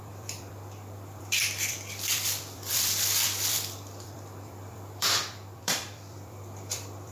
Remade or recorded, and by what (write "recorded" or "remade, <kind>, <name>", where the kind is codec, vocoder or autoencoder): remade, vocoder, BigVGAN v2